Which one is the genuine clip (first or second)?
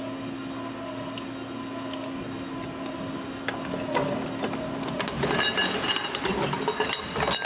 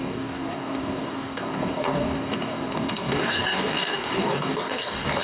first